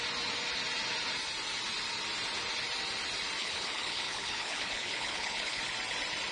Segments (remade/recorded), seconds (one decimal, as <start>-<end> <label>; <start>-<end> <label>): 0.0-3.4 recorded; 3.4-5.6 remade; 5.6-6.3 recorded